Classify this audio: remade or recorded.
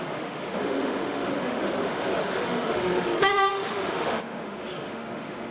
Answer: remade